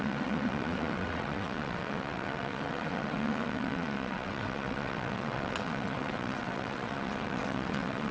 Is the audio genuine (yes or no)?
no